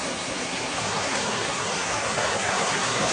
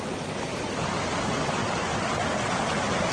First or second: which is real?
second